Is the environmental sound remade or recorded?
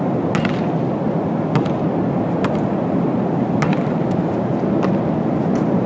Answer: recorded